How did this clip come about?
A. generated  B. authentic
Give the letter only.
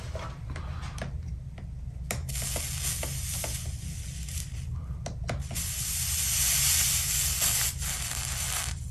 B